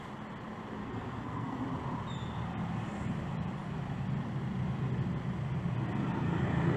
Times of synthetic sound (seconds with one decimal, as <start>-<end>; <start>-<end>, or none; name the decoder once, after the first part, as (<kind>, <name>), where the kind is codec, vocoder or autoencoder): 0.8-1.6 (codec, SNAC)